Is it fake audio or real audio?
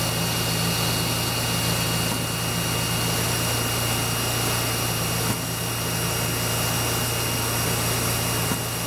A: real